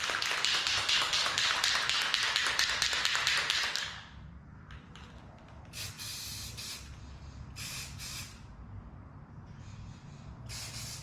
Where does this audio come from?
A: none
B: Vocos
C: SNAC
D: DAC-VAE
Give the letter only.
A